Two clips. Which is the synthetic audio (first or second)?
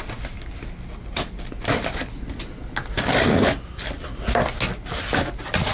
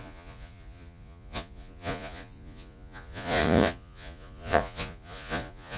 second